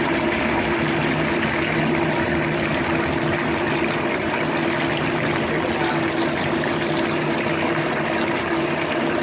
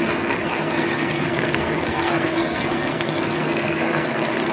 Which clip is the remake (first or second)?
second